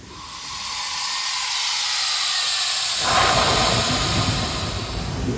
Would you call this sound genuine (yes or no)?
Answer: yes